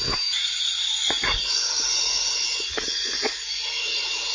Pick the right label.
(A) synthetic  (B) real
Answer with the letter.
B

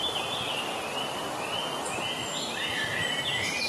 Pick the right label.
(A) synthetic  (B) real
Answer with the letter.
A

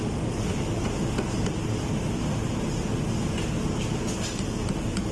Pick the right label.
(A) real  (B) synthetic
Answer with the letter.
A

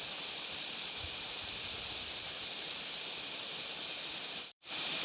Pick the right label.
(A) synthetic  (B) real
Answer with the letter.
A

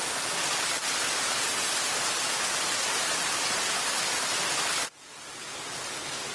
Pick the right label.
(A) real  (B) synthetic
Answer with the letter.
A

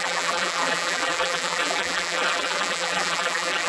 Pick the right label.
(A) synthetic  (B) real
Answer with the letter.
A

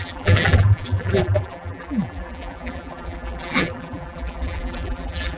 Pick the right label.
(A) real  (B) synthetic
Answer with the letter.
B